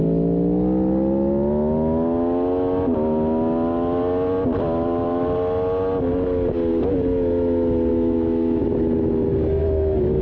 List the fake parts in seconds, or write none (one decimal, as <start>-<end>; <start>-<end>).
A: 7.9-8.6; 9.6-10.2